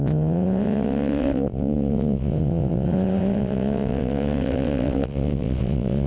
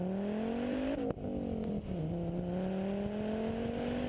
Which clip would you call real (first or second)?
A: second